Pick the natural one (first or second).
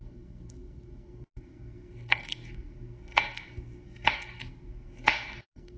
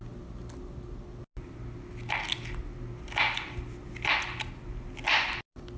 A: second